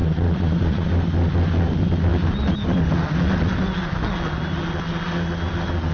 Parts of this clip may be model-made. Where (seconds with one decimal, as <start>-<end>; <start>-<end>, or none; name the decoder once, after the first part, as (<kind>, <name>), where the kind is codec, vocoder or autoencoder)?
0.0-0.9 (vocoder, Vocos)